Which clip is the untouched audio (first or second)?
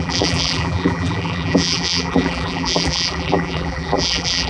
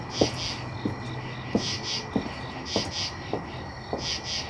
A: second